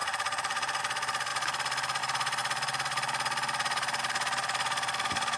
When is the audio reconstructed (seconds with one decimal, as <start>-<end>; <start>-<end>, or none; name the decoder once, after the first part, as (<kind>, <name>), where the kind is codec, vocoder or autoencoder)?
0.0-0.8 (vocoder, BigVGAN v2)